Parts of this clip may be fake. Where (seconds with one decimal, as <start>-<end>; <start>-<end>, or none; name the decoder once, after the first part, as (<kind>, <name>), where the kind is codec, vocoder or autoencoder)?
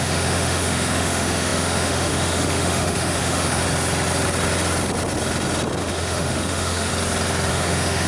0.0-3.6 (autoencoder, DAC-VAE); 5.8-6.9; 7.5-8.1